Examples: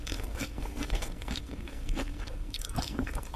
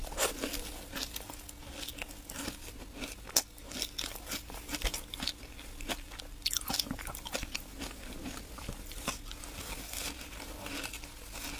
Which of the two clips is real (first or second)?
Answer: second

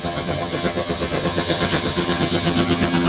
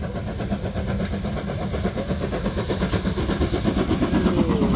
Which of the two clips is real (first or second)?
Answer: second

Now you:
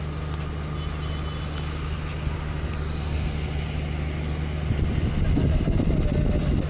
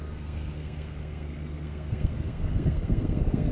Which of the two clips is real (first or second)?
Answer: first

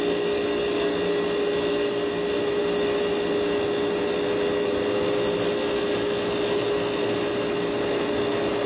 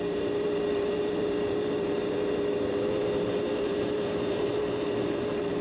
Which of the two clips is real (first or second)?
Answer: first